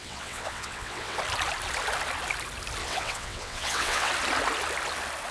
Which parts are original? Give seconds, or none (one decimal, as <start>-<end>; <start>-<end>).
1.2-2.8; 4.1-5.3